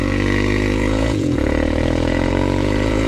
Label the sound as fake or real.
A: fake